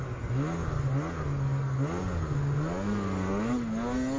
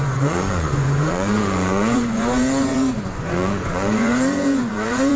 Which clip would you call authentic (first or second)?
first